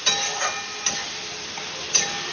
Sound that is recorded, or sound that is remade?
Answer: recorded